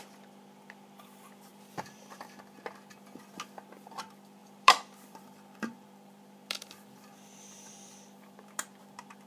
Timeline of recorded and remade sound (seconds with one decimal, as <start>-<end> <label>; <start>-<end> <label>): 0.0-1.5 recorded; 1.5-2.4 remade; 2.4-4.4 recorded; 4.4-8.8 remade; 8.8-9.3 recorded